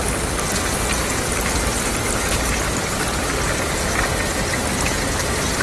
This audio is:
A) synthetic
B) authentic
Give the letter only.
B